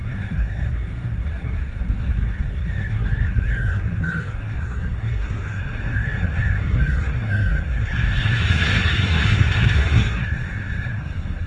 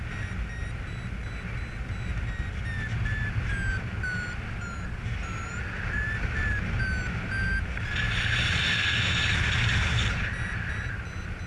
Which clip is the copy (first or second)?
first